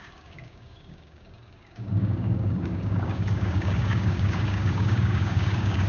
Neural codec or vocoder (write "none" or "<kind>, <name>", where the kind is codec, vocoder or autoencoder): codec, DAC